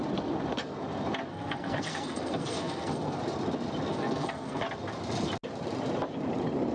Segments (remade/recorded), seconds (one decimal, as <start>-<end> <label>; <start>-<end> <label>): 0.0-1.3 recorded; 1.3-3.2 remade; 3.2-3.9 recorded; 3.9-4.6 remade; 4.6-6.7 recorded